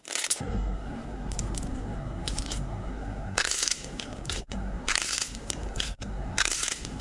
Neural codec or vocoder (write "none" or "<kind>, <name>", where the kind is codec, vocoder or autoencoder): codec, SNAC